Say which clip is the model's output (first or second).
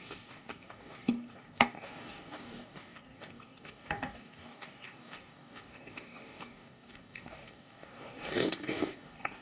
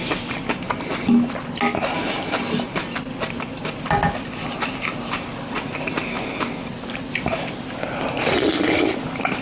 first